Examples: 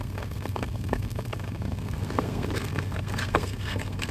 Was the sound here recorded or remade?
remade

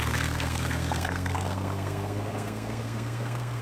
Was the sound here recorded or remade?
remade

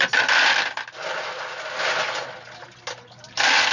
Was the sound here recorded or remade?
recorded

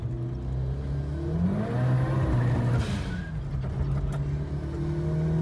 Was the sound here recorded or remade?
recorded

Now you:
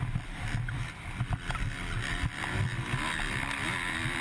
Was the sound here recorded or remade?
recorded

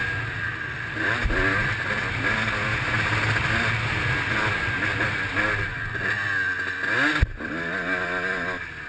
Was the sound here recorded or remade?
recorded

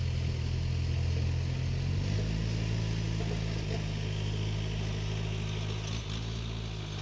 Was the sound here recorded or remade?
recorded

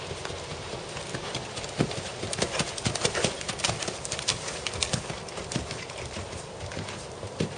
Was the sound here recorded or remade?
recorded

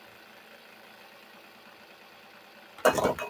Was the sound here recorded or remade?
recorded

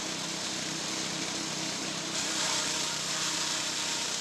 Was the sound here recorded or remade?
remade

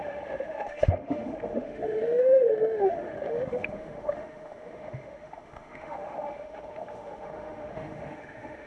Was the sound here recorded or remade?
remade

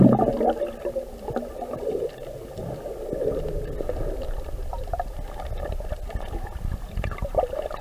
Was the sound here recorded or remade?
recorded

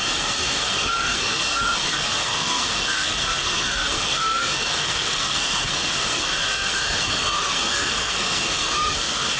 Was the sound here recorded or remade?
remade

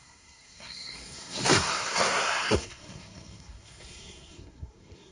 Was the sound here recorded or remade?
remade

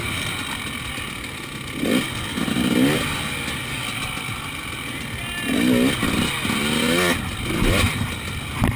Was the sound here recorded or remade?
recorded